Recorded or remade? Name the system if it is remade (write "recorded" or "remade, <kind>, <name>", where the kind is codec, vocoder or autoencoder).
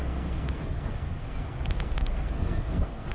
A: remade, codec, SNAC